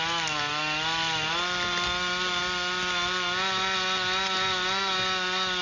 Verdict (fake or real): real